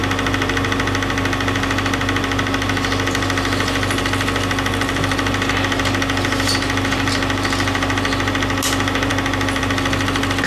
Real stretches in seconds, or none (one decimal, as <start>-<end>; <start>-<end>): 0.0-10.5

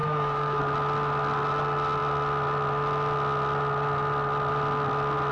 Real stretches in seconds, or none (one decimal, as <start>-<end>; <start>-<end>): 0.6-5.3

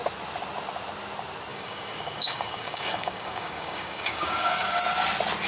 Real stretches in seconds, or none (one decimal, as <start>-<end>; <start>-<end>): 0.0-1.5; 4.8-5.5